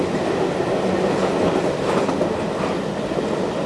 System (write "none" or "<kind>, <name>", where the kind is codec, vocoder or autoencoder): none